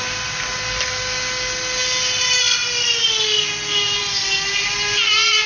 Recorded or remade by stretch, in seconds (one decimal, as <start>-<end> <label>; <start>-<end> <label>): 0.0-5.5 recorded